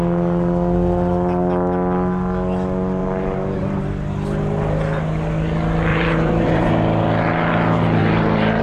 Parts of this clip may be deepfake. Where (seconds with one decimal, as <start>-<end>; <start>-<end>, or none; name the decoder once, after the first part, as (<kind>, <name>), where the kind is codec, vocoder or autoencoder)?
3.0-3.8 (vocoder, BigVGAN v2); 5.9-6.7; 8.0-8.6